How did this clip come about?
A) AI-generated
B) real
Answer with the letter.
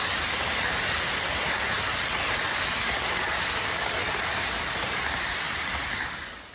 B